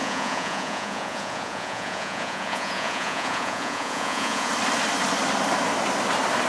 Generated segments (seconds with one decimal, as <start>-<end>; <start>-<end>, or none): 0.0-4.5